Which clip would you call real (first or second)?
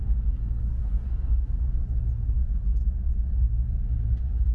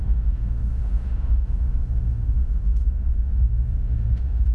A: first